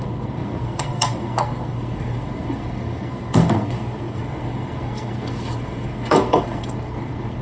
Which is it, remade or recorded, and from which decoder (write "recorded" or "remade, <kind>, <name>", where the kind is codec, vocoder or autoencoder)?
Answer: remade, codec, SNAC